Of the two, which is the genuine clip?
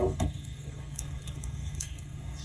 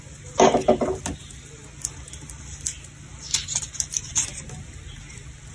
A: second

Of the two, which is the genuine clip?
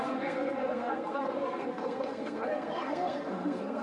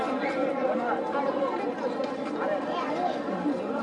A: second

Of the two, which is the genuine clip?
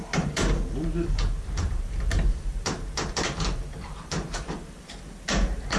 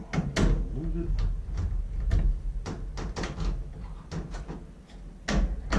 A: second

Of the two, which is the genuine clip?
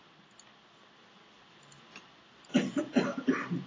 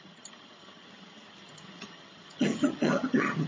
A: first